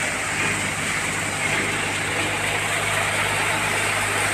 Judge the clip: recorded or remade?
recorded